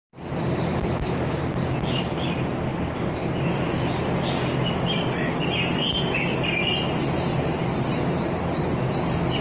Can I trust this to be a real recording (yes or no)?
yes